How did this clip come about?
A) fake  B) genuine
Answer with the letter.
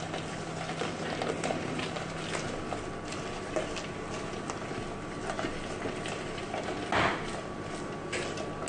B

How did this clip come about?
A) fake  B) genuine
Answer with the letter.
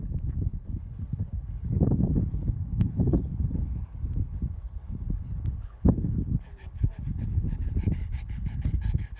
A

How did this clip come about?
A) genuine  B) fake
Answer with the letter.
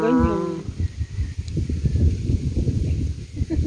A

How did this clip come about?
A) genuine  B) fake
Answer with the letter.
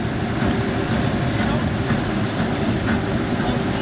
A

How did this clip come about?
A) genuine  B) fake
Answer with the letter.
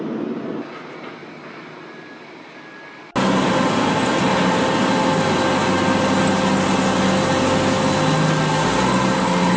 A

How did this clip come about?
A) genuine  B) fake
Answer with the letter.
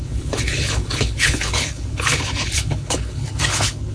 B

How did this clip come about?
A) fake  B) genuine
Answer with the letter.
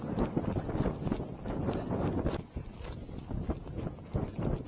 B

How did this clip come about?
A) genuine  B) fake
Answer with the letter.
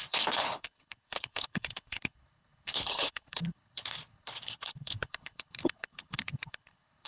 B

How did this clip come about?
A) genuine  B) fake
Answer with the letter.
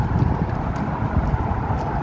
A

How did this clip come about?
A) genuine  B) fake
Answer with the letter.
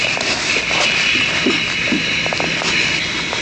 A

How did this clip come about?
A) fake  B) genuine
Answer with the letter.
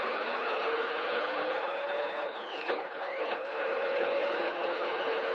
A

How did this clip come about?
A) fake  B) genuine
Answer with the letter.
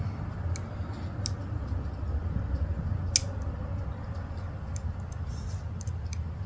B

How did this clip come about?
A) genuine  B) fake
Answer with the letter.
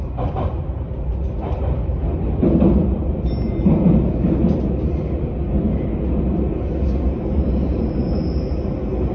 A